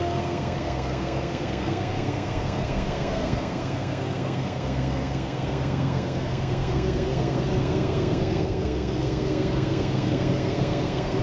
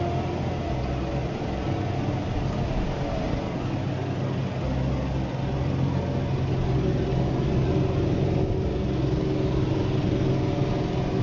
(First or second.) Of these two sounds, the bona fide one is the second